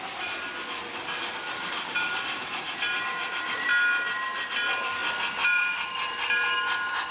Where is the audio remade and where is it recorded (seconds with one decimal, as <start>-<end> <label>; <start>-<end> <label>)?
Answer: 0.0-3.7 remade; 3.7-4.5 recorded; 4.5-5.0 remade; 5.0-5.7 recorded; 5.7-7.1 remade